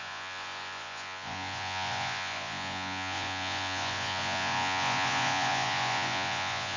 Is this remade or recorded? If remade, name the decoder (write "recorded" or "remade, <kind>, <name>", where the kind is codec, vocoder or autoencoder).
remade, vocoder, Vocos